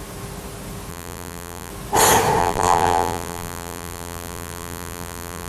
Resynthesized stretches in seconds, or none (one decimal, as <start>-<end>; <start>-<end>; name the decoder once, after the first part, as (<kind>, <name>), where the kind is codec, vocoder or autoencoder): 0.9-1.7 (vocoder, BigVGAN v2); 2.4-5.5